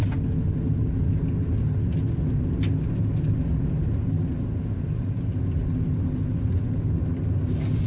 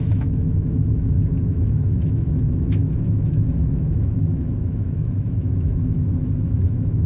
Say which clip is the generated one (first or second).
second